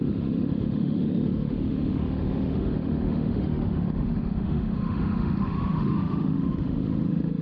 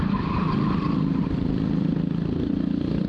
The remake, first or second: first